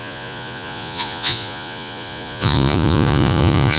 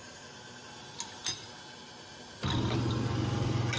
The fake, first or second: first